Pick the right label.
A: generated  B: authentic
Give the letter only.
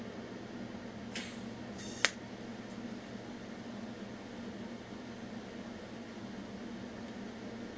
B